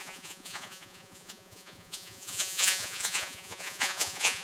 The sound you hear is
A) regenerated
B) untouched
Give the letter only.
A